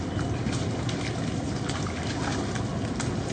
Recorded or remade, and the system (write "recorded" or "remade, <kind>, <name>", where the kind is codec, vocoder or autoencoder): recorded